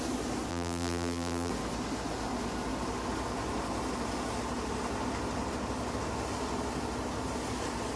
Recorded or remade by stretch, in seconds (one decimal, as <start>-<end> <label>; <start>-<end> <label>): 0.0-0.5 recorded; 0.5-1.5 remade; 1.5-8.0 recorded